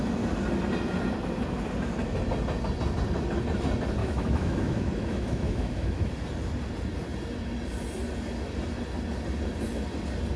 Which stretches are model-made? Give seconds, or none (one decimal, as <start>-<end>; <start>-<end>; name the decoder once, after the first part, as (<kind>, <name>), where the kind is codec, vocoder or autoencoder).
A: 4.0-6.1 (autoencoder, DAC-VAE)

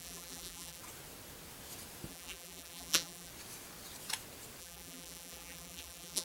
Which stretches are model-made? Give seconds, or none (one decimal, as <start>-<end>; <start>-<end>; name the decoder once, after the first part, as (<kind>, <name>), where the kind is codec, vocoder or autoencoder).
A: 0.0-0.8 (vocoder, BigVGAN v2); 2.1-3.3; 4.6-6.2